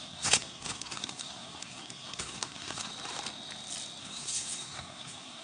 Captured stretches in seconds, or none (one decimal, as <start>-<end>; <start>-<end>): 2.9-4.0